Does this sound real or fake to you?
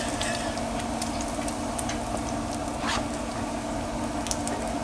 real